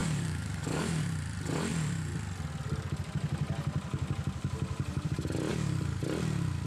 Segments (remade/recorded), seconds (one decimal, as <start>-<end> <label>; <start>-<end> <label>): 0.0-1.0 remade; 1.0-5.5 recorded; 5.5-6.0 remade; 6.0-6.7 recorded